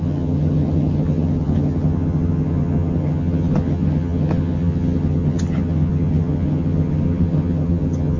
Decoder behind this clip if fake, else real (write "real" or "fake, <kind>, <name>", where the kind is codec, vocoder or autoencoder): fake, vocoder, HiFi-GAN